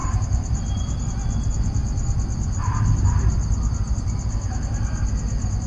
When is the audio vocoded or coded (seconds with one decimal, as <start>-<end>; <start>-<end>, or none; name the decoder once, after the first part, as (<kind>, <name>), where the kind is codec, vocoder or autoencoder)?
0.0-1.0 (vocoder, BigVGAN v2)